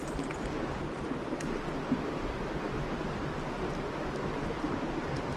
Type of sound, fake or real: real